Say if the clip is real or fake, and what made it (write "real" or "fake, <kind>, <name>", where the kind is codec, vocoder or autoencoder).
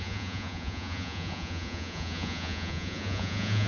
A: fake, vocoder, Vocos